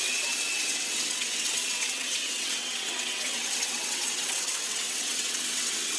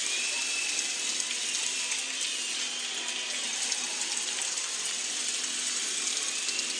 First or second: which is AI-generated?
first